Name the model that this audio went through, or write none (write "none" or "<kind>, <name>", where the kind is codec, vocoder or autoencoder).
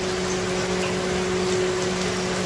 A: none